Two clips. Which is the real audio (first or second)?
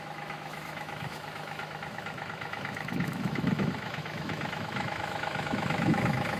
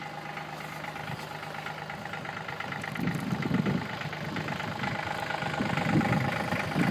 second